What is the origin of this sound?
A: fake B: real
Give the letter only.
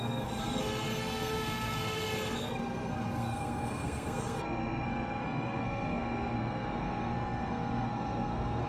A